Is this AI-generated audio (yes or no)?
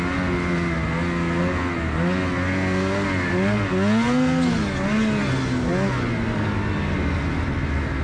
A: no